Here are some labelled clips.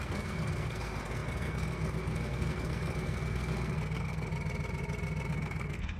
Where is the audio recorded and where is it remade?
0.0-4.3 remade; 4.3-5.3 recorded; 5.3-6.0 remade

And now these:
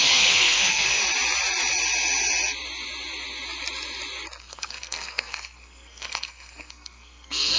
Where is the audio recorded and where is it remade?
0.0-1.0 remade; 1.0-4.4 recorded; 4.4-7.6 remade

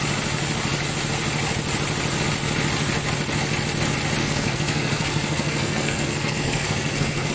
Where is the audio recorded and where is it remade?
0.0-4.2 recorded; 4.2-7.3 remade

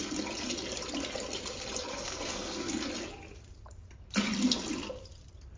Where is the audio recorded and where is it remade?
0.0-1.9 recorded; 1.9-2.7 remade; 2.7-5.6 recorded

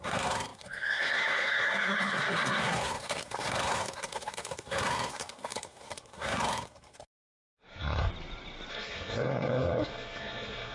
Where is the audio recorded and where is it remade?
0.0-8.1 remade; 8.1-8.7 recorded; 8.7-10.7 remade